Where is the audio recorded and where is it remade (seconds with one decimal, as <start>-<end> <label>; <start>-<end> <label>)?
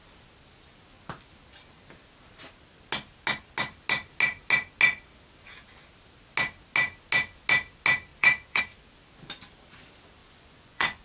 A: 0.0-8.1 recorded; 8.1-8.6 remade; 8.6-10.2 recorded; 10.2-11.0 remade